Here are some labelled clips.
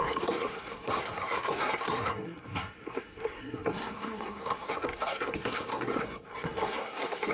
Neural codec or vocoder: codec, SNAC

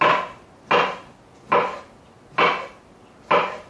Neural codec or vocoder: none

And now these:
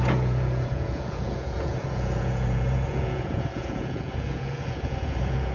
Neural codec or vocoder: vocoder, Vocos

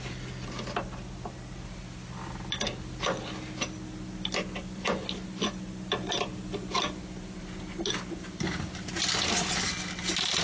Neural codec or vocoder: none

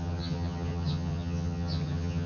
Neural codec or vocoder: vocoder, HiFi-GAN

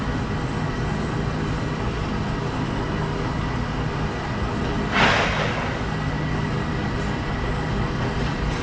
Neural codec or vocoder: none